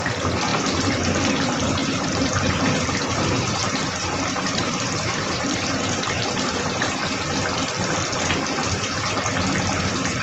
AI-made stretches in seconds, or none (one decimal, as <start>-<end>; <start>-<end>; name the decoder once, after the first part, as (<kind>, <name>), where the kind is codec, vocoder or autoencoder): 0.5-1.3 (vocoder, BigVGAN v2); 1.8-7.0; 8.6-9.2

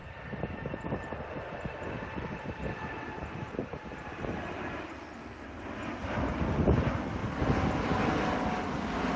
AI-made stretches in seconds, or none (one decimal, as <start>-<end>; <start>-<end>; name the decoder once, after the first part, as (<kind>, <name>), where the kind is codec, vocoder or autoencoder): 0.0-4.2 (vocoder, BigVGAN v2); 4.7-5.6